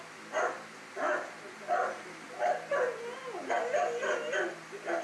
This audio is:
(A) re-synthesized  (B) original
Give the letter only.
B